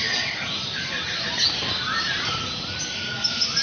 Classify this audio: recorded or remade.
recorded